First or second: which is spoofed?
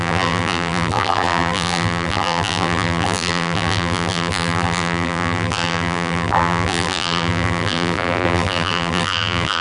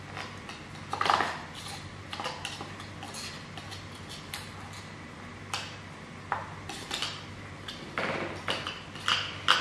first